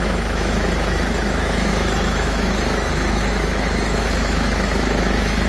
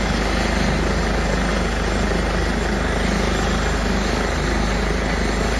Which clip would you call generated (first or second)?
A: first